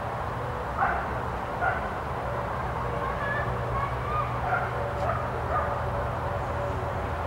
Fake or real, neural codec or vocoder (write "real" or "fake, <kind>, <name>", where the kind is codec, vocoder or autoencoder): real